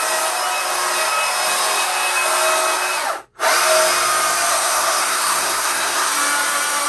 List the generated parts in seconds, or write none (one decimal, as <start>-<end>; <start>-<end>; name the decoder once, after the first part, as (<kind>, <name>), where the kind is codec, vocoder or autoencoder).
4.5-6.1 (codec, SNAC)